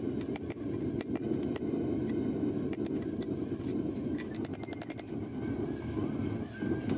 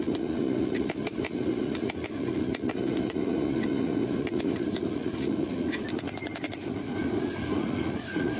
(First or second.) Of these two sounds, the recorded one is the first